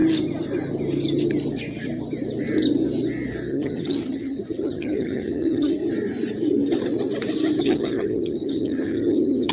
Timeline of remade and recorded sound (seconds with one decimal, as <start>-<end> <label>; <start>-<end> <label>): 0.0-3.5 recorded; 3.5-5.8 remade; 5.8-7.6 recorded; 7.6-9.5 remade